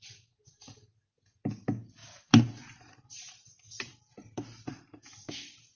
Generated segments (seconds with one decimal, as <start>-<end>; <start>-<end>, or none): 0.0-0.9; 1.6-5.8